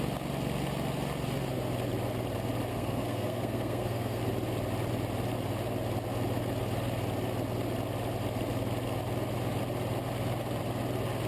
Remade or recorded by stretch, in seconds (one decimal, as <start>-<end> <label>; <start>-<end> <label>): 0.0-2.7 recorded; 2.7-4.2 remade; 4.2-11.3 recorded